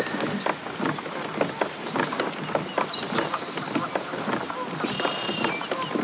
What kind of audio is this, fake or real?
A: real